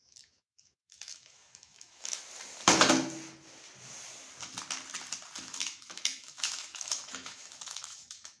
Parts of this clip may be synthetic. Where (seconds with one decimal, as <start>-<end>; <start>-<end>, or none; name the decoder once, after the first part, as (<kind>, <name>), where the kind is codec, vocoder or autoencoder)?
0.0-2.2 (autoencoder, DAC-VAE); 5.4-8.4